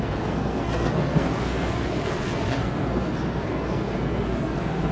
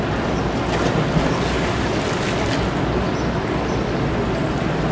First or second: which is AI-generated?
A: first